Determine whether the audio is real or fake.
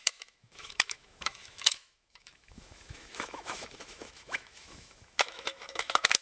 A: fake